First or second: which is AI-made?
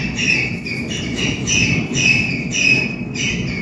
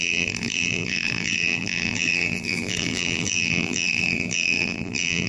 second